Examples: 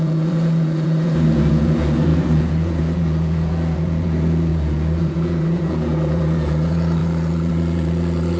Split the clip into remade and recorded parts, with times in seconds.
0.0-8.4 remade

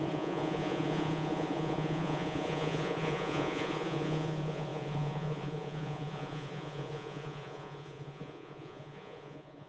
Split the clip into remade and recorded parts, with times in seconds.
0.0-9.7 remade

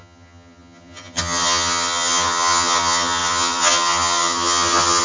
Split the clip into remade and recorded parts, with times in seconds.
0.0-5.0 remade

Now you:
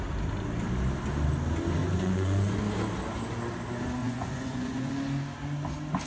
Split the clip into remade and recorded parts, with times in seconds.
0.0-1.8 recorded; 1.8-2.6 remade; 2.6-4.0 recorded; 4.0-4.9 remade; 4.9-6.1 recorded

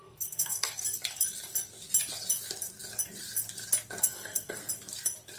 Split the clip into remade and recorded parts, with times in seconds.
0.0-0.8 remade; 0.8-4.0 recorded; 4.0-4.6 remade; 4.6-5.4 recorded